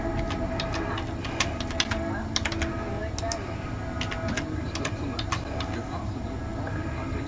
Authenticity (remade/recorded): recorded